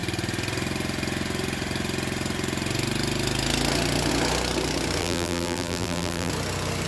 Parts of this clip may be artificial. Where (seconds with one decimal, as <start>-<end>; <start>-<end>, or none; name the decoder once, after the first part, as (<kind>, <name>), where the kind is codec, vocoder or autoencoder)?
5.0-6.3 (vocoder, BigVGAN v2)